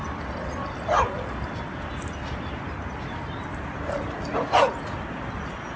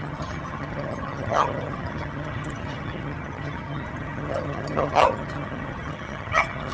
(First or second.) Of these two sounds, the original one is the first